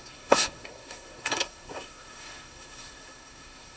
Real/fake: fake